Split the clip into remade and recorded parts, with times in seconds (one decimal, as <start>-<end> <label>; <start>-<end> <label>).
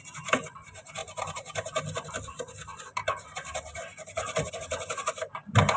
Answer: 0.0-5.8 recorded